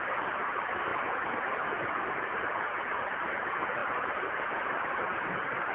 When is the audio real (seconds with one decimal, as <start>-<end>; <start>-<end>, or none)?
0.0-3.8; 5.3-5.7